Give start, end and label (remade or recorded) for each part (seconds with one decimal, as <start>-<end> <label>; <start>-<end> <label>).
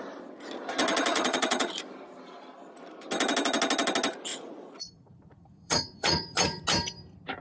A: 0.0-1.1 recorded; 1.1-1.8 remade; 1.8-4.3 recorded; 4.3-6.6 remade; 6.6-7.4 recorded